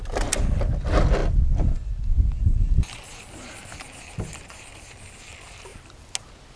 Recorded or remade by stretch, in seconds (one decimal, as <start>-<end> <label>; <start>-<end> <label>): 0.0-6.6 recorded